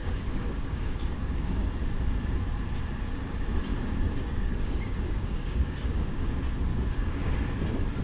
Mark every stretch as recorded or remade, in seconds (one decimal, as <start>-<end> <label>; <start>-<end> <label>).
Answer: 0.0-1.7 remade; 1.7-3.7 recorded; 3.7-6.2 remade; 6.2-6.7 recorded; 6.7-7.3 remade; 7.3-8.0 recorded